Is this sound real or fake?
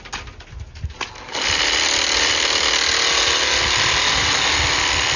real